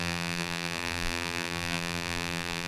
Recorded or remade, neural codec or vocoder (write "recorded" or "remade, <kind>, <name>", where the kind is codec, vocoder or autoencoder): remade, vocoder, BigVGAN v2